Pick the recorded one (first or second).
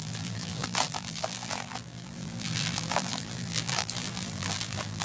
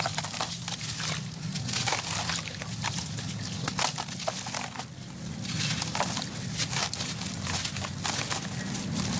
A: second